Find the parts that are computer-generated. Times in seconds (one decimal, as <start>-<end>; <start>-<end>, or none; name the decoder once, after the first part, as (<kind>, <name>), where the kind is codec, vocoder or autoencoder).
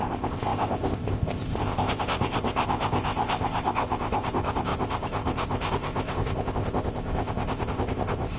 0.0-8.4 (codec, ZipCodec)